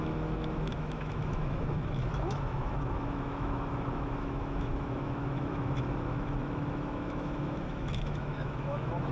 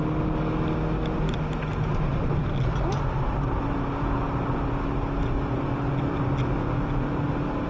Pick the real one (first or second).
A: second